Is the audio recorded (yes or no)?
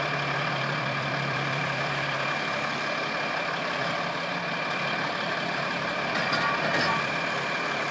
no